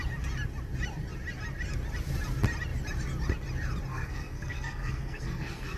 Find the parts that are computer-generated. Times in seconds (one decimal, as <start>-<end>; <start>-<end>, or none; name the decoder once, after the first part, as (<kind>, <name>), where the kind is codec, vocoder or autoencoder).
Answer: 3.9-5.8 (codec, SNAC)